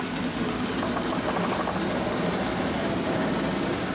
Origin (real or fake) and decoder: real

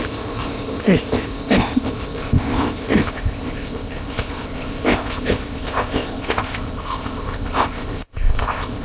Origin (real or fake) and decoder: fake, codec, ZipCodec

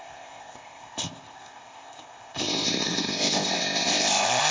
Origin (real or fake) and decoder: fake, codec, ZipCodec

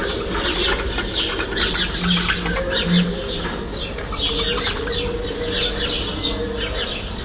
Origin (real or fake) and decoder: real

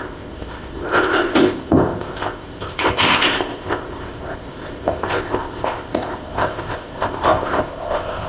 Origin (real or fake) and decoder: fake, codec, ZipCodec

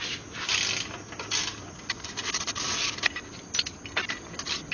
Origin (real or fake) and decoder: real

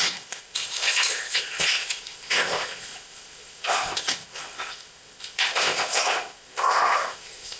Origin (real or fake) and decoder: fake, codec, ZipCodec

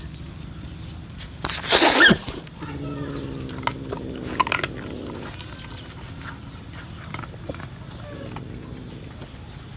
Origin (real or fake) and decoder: real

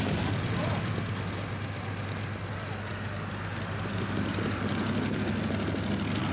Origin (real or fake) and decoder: real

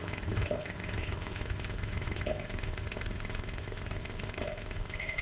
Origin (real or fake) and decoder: fake, codec, ZipCodec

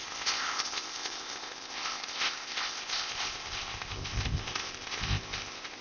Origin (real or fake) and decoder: fake, codec, ZipCodec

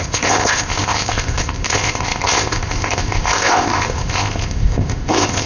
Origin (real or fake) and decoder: fake, codec, ZipCodec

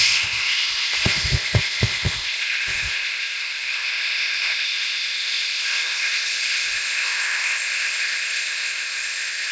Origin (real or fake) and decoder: fake, codec, ZipCodec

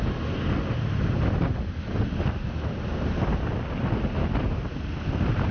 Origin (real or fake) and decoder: real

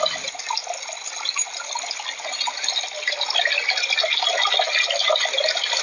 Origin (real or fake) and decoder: real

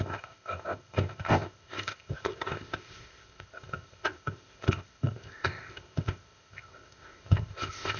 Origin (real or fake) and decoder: fake, codec, ZipCodec